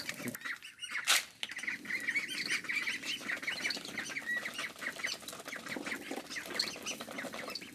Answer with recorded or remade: recorded